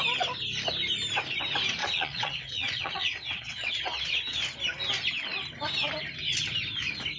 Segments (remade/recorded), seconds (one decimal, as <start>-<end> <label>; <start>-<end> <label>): 0.0-1.8 recorded; 1.8-3.7 remade; 3.7-7.2 recorded